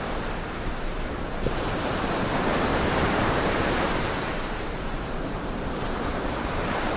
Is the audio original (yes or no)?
no